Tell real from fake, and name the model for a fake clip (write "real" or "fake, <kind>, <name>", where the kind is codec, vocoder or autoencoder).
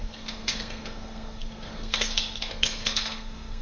fake, codec, SNAC